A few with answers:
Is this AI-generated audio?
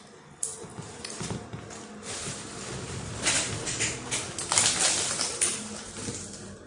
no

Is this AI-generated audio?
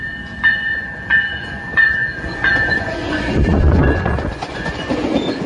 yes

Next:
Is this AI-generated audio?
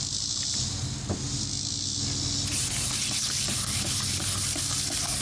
no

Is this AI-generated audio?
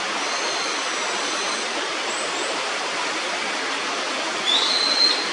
no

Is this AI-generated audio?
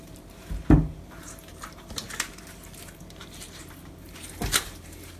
yes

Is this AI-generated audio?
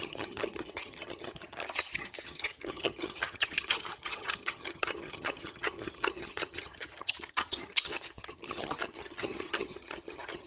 yes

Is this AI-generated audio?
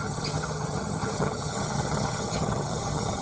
yes